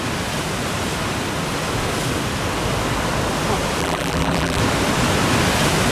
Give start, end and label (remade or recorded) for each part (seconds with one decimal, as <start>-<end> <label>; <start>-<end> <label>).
0.0-3.8 recorded; 3.8-4.6 remade; 4.6-5.9 recorded